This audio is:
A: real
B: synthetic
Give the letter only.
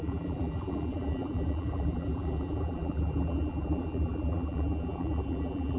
B